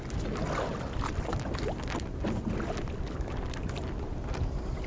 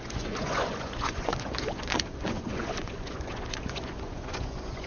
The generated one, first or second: second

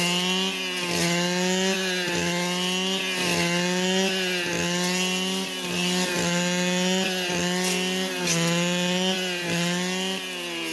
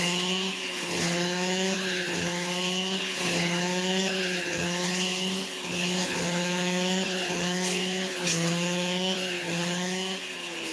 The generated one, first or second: second